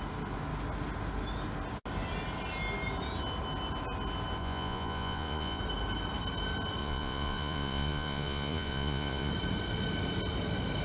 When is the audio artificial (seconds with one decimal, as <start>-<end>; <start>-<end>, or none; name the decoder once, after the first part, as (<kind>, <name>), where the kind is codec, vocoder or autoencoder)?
4.4-5.6 (vocoder, Vocos); 6.8-9.3